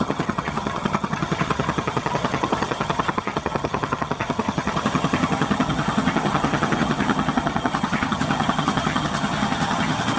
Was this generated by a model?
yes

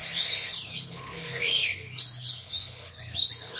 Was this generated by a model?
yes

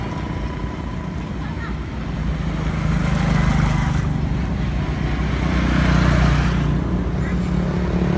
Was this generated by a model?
no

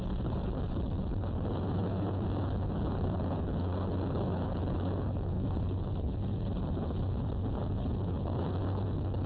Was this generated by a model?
yes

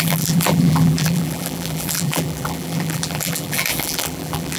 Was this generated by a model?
yes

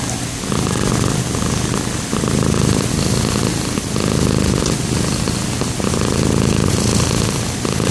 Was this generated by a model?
no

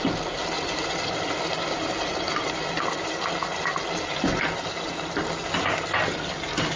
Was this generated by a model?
no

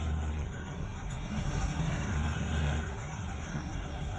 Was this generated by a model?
yes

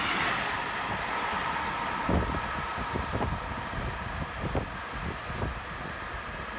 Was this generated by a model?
no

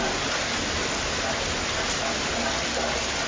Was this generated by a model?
no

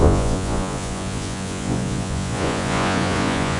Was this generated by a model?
yes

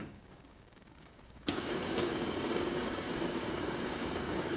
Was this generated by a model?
yes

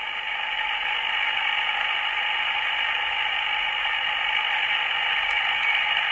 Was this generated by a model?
no